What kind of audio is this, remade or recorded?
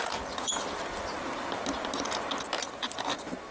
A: recorded